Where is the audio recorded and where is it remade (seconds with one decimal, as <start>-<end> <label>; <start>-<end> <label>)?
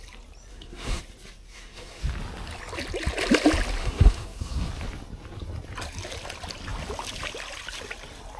0.0-0.5 recorded; 0.5-1.0 remade; 1.0-1.5 recorded; 1.5-2.0 remade; 2.0-3.8 recorded; 3.8-4.7 remade; 4.7-8.4 recorded